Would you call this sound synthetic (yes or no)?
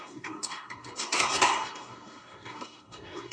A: yes